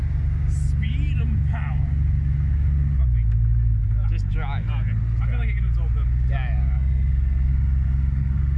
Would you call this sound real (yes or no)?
yes